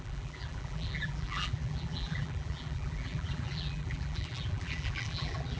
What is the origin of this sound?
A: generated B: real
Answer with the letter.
A